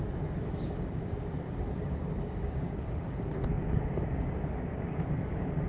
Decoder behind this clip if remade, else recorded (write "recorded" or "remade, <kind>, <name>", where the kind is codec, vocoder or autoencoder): remade, codec, DAC